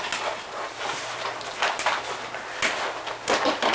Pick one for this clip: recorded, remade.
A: recorded